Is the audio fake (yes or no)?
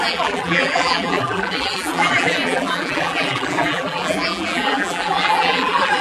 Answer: yes